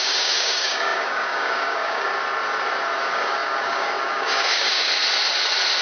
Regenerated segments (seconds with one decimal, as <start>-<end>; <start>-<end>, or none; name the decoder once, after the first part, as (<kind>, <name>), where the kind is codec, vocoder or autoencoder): 0.0-2.1 (codec, DAC); 3.0-4.9